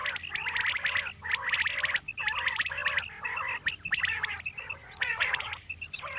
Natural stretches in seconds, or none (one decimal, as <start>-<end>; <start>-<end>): 0.0-4.8; 5.5-6.2